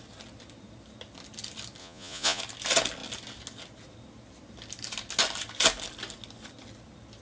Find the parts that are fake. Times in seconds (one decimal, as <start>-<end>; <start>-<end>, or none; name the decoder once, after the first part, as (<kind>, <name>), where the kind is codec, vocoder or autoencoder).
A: 1.8-2.4 (vocoder, Vocos)